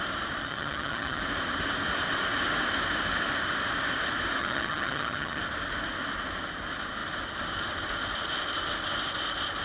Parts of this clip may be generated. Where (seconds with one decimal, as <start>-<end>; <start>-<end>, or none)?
0.4-1.2; 4.4-5.4